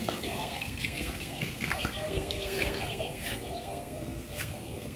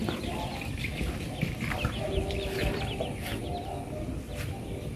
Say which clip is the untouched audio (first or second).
second